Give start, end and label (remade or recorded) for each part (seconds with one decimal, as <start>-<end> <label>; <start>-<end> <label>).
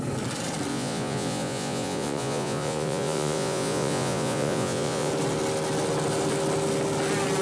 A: 0.0-0.7 recorded; 0.7-5.1 remade; 5.1-7.4 recorded